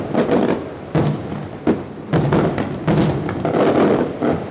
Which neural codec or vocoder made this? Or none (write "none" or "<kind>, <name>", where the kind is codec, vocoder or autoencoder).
none